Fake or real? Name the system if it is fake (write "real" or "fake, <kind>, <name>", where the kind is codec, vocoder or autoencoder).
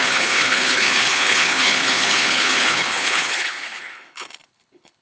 fake, codec, HILCodec